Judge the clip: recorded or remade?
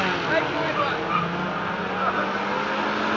recorded